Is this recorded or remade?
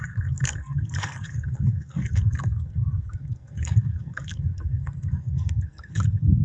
remade